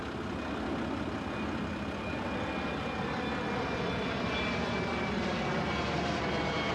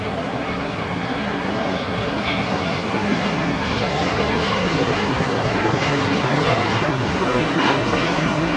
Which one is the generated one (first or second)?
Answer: second